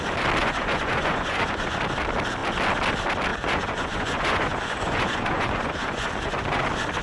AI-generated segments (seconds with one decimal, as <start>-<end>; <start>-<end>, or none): 0.4-1.8; 3.3-6.6

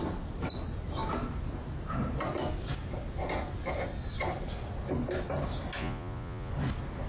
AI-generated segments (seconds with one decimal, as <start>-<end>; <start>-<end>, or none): 5.8-6.5